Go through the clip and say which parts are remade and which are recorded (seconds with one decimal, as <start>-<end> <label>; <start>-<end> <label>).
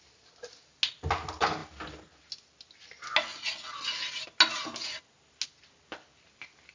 0.0-6.7 recorded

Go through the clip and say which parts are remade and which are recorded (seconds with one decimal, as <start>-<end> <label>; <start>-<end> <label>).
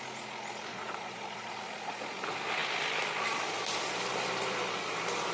0.0-0.7 recorded; 0.7-1.5 remade; 1.5-5.3 recorded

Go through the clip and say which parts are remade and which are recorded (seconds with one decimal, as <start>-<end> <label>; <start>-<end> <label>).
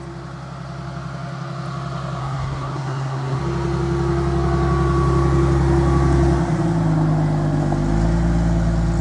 0.0-2.2 recorded; 2.2-3.4 remade; 3.4-9.0 recorded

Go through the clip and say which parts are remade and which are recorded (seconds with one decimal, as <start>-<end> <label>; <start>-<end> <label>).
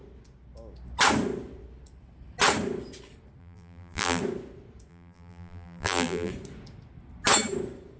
0.0-3.4 recorded; 3.4-4.2 remade; 4.2-4.9 recorded; 4.9-6.3 remade; 6.3-8.0 recorded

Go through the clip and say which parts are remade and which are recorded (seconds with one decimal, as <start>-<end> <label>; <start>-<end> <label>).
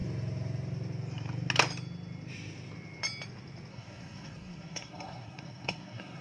0.0-3.7 recorded; 3.7-6.2 remade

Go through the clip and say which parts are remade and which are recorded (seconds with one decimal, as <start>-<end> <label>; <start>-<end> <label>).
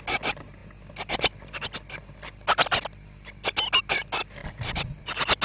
0.0-5.4 recorded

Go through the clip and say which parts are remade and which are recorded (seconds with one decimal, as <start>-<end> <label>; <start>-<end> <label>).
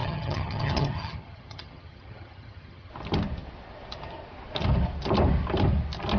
0.0-2.9 remade; 2.9-6.2 recorded